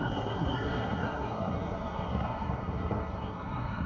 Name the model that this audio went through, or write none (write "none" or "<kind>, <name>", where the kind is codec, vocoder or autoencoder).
codec, SNAC